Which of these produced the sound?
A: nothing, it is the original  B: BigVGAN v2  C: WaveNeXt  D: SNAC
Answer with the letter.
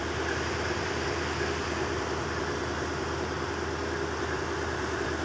B